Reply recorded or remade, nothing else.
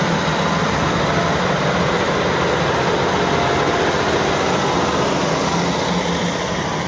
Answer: recorded